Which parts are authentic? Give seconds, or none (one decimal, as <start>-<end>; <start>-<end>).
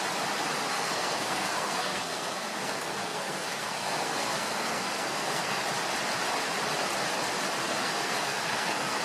0.0-0.7; 5.6-7.6